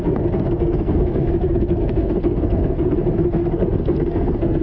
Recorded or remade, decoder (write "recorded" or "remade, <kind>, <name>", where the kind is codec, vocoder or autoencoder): remade, codec, SNAC